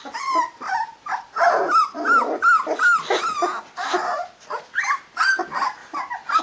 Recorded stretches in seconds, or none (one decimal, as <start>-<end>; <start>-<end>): 0.0-1.4; 2.5-6.4